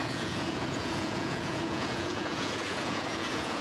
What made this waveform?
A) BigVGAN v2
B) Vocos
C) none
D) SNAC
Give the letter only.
B